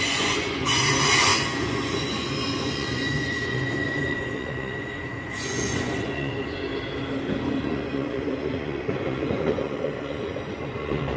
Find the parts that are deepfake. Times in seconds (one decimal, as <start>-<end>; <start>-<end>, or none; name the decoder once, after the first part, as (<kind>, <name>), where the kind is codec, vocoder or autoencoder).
0.0-6.7 (vocoder, Vocos); 7.6-11.2